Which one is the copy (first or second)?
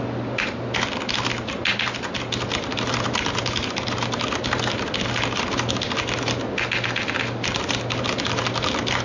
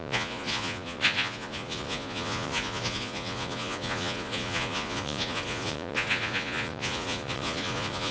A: second